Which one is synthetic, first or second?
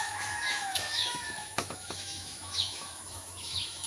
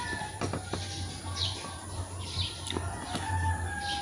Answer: first